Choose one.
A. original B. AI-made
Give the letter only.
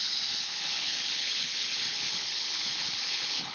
B